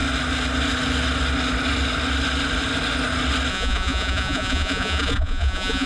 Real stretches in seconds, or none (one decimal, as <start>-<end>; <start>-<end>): 0.0-3.5